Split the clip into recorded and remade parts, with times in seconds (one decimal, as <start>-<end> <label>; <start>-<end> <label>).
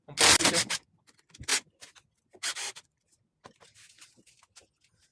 0.0-5.1 recorded